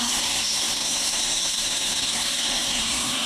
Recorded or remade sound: remade